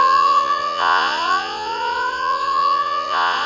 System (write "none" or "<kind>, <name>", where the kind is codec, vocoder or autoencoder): vocoder, Vocos